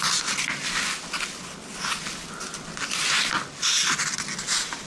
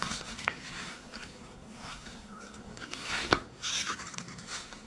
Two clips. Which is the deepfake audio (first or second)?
second